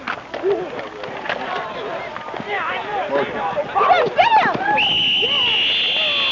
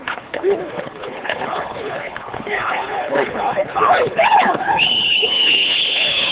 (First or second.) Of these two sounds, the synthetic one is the second